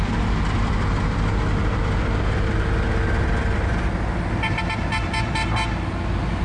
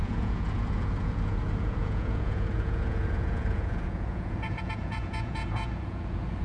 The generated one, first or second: second